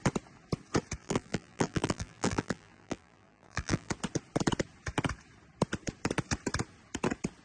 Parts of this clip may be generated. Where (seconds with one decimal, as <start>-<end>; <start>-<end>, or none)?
1.0-3.9